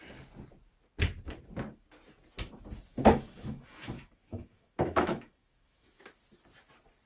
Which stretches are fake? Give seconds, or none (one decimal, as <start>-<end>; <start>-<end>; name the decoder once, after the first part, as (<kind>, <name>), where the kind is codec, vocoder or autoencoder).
2.9-6.0 (autoencoder, DAC-VAE)